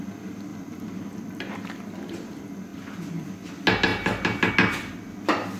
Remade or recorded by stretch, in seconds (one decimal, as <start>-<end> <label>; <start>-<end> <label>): 0.0-0.5 recorded; 0.5-1.7 remade; 1.7-2.7 recorded; 2.7-3.5 remade; 3.5-5.6 recorded